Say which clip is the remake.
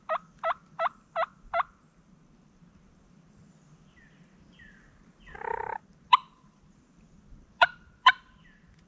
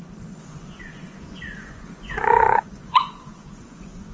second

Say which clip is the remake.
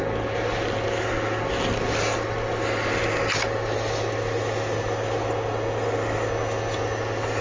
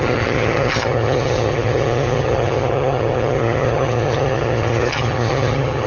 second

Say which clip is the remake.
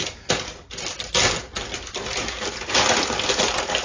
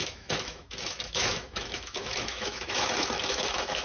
second